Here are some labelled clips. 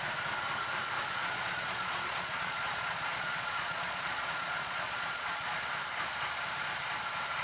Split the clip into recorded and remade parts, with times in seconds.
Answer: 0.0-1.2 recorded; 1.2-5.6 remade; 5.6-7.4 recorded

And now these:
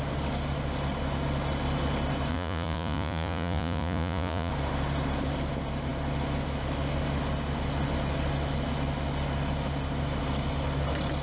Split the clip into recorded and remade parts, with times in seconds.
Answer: 0.0-2.3 recorded; 2.3-4.5 remade; 4.5-11.2 recorded